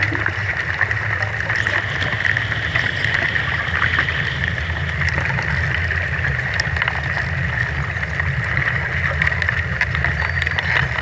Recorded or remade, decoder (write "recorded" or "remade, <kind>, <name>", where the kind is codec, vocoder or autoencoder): recorded